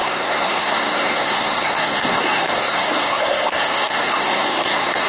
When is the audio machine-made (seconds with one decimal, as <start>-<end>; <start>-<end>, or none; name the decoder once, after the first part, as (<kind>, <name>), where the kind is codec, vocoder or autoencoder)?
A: 0.0-5.1 (codec, SNAC)